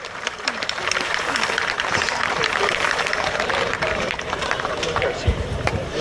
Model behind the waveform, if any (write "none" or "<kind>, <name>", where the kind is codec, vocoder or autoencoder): vocoder, BigVGAN v2